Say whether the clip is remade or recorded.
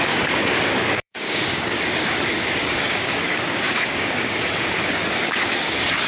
remade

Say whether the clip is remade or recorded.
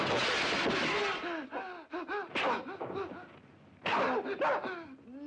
recorded